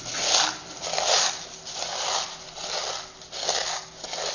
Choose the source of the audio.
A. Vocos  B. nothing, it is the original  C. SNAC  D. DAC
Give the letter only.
B